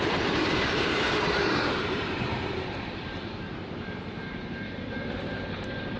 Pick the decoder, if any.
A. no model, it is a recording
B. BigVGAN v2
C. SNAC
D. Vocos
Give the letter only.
B